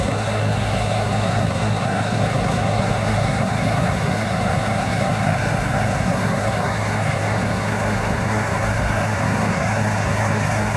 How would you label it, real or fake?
fake